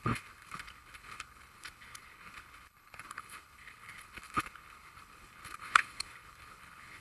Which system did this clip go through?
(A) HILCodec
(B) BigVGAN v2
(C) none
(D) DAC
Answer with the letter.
A